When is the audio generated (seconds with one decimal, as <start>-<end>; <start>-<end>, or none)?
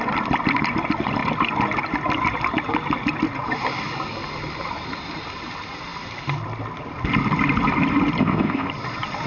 8.2-8.7